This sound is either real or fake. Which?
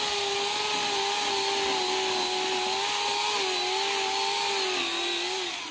real